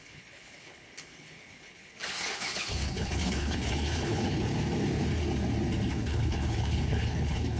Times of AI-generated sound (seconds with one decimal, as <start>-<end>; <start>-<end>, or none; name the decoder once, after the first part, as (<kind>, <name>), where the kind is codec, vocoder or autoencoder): 0.0-4.5 (codec, HILCodec); 5.9-7.6